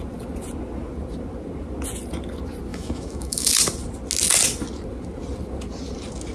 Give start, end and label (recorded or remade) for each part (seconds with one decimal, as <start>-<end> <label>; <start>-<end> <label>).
0.0-2.7 recorded; 2.7-3.5 remade; 3.5-6.3 recorded